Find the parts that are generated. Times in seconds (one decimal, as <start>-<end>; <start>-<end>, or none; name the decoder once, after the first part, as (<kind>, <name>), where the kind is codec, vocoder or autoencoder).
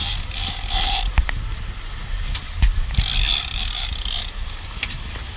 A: none